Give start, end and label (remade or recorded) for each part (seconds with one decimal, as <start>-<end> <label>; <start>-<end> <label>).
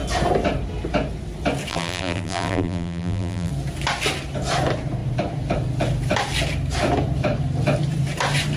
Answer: 0.0-1.7 recorded; 1.7-3.5 remade; 3.5-8.6 recorded